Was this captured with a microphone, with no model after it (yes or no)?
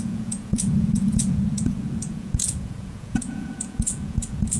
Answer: no